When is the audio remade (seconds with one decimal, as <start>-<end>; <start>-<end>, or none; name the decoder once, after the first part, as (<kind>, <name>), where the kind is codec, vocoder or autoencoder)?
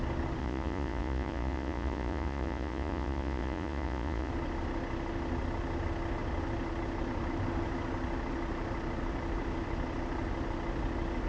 0.4-4.3 (vocoder, Vocos)